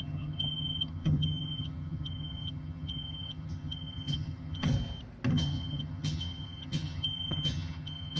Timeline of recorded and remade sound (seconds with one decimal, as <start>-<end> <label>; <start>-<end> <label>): 0.0-4.7 remade; 4.7-5.3 recorded; 5.3-8.2 remade